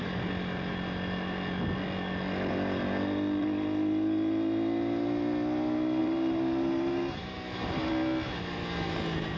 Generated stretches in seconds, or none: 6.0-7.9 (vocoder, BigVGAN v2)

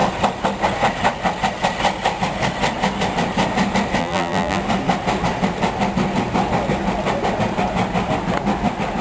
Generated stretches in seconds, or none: 4.0-4.6 (vocoder, BigVGAN v2)